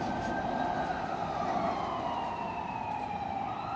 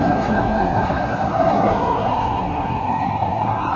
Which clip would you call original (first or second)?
first